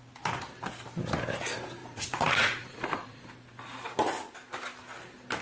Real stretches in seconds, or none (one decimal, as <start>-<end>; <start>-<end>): 0.0-1.8; 3.2-5.4